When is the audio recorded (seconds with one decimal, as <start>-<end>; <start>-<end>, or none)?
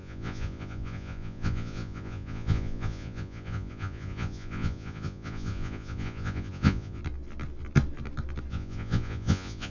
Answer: 7.0-8.5